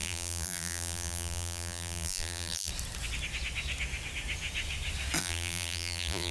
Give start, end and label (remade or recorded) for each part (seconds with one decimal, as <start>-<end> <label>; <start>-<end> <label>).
0.0-2.7 remade; 2.7-5.2 recorded; 5.2-6.3 remade